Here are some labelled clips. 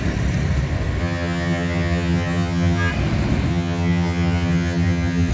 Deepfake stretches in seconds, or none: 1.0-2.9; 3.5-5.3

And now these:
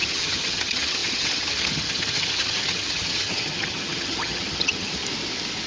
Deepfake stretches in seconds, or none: 0.0-5.0

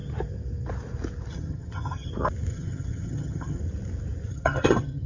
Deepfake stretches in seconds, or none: 1.3-2.1; 2.5-3.6; 4.3-5.1

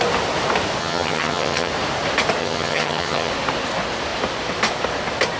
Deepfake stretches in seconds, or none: 0.8-1.7; 2.4-3.3

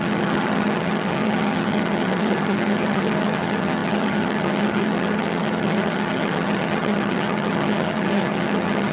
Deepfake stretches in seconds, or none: 0.0-8.9